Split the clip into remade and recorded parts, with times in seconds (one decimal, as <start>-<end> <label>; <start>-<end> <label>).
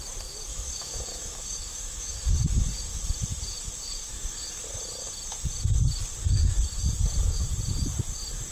0.0-0.5 recorded; 0.5-2.1 remade; 2.1-8.5 recorded